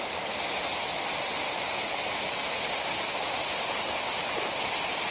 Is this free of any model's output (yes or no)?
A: yes